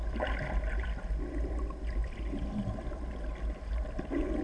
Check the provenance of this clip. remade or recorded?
recorded